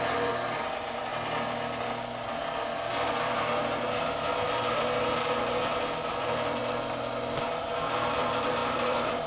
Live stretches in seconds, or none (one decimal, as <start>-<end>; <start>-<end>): 1.1-5.5; 6.6-7.6